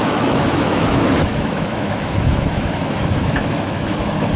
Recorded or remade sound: remade